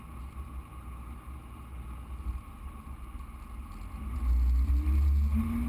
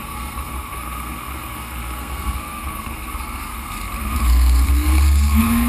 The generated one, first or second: second